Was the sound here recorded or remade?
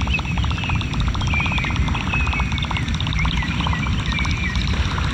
recorded